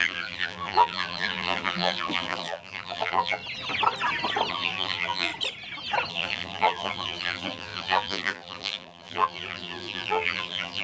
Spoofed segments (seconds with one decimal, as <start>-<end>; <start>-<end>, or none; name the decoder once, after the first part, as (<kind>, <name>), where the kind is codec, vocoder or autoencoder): 0.0-3.4 (vocoder, BigVGAN v2); 4.5-5.3; 6.1-10.8